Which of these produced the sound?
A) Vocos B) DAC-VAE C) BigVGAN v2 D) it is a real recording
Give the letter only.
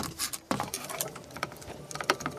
D